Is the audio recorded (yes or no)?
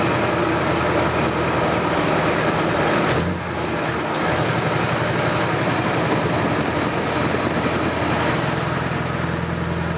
yes